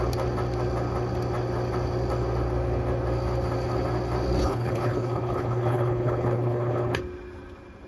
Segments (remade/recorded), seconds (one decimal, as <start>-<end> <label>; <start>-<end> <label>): 0.0-4.4 recorded; 4.4-7.0 remade; 7.0-7.9 recorded